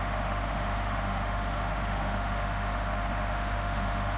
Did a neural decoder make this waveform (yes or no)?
yes